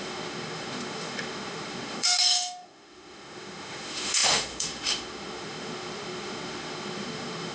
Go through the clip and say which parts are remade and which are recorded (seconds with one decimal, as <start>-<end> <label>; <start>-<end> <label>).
0.0-7.5 remade